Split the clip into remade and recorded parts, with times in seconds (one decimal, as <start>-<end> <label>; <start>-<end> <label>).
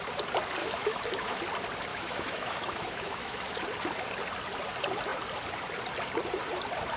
0.0-0.6 recorded; 0.6-1.4 remade; 1.4-1.9 recorded; 1.9-3.6 remade; 3.6-7.0 recorded